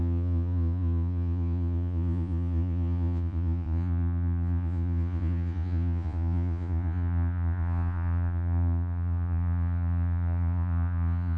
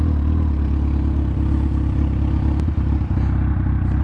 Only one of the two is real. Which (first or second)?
second